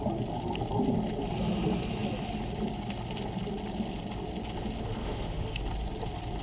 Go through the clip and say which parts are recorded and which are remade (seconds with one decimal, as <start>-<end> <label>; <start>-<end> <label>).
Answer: 0.0-5.0 recorded; 5.0-5.6 remade; 5.6-6.4 recorded